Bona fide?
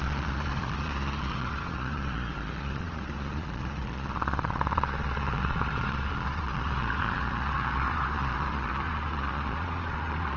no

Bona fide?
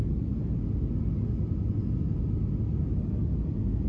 yes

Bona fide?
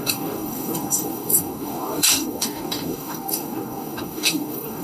no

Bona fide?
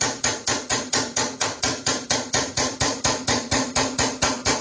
no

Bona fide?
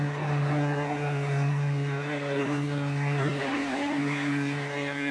no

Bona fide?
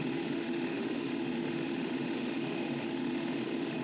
no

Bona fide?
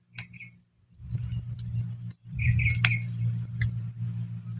yes